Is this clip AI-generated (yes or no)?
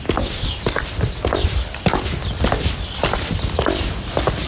yes